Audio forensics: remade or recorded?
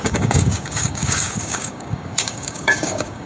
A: remade